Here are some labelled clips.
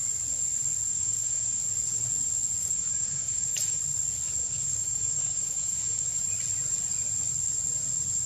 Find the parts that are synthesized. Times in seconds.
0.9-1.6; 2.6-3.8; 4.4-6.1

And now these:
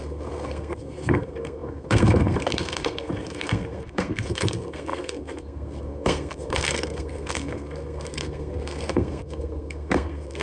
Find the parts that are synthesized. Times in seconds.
0.0-10.4

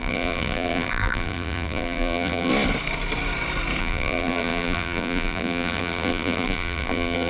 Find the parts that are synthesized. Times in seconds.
0.0-2.5; 3.8-7.3

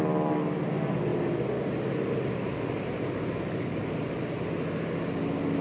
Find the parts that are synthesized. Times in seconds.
none